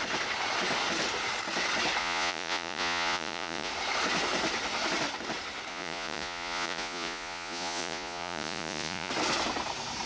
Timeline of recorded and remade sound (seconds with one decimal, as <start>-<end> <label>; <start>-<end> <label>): 0.0-2.0 recorded; 2.0-3.7 remade; 3.7-5.7 recorded; 5.7-9.1 remade; 9.1-10.1 recorded